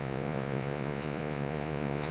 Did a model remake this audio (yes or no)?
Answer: yes